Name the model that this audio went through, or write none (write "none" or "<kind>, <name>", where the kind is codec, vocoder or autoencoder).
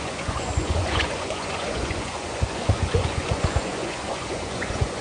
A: vocoder, Vocos